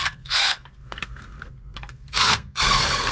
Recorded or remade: remade